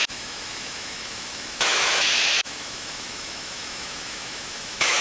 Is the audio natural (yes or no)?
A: no